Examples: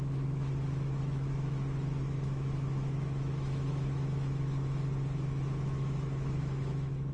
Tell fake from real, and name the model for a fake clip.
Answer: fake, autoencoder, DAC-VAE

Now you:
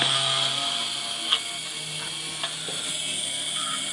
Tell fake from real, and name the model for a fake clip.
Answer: real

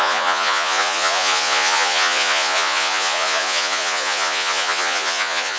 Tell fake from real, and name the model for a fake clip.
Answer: fake, vocoder, Vocos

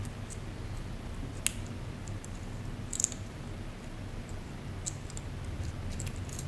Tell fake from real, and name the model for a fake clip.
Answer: real